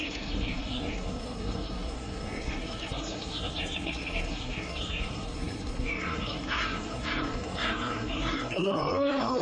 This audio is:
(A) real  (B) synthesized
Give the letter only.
B